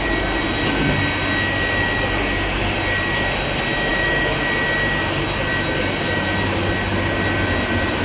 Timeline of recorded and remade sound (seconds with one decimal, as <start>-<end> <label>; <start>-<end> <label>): 0.0-8.0 recorded

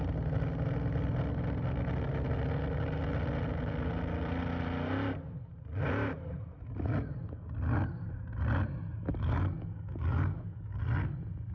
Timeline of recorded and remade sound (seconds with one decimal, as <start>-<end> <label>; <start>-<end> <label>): 0.0-9.1 recorded; 9.1-10.8 remade; 10.8-11.5 recorded

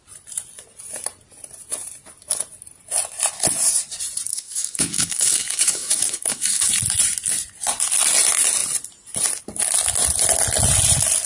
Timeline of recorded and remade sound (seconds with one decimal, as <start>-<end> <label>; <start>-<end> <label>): 0.0-4.3 recorded; 4.3-6.7 remade; 6.7-11.3 recorded

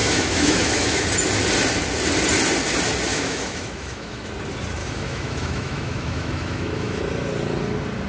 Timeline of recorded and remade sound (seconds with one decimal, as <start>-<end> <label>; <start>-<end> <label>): 0.0-1.0 remade; 1.0-3.1 recorded; 3.1-4.3 remade; 4.3-4.8 recorded; 4.8-7.0 remade; 7.0-8.1 recorded

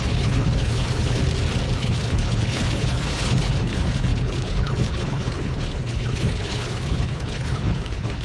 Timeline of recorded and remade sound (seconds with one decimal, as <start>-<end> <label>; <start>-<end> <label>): 0.0-1.2 remade; 1.2-1.8 recorded; 1.8-8.2 remade

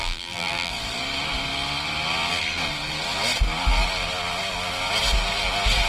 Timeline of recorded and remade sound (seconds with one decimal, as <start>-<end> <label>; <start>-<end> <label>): 0.0-0.7 remade; 0.7-5.9 recorded

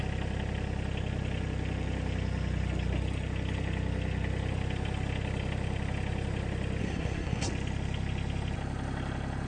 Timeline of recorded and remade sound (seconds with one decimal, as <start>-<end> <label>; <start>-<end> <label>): 0.0-6.8 recorded; 6.8-7.5 remade; 7.5-9.5 recorded

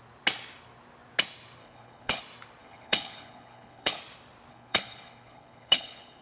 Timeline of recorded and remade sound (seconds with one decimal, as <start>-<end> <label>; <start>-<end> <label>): 0.0-1.6 recorded; 1.6-2.2 remade; 2.2-2.6 recorded; 2.6-4.0 remade; 4.0-4.5 recorded; 4.5-6.2 remade